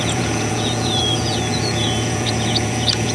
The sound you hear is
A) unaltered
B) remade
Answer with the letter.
B